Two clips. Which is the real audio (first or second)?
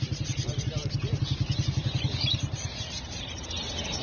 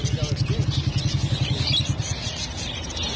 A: second